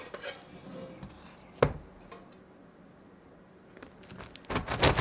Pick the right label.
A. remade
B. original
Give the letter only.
B